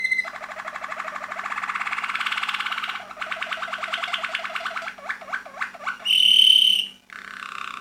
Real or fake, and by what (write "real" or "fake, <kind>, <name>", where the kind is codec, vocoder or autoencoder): real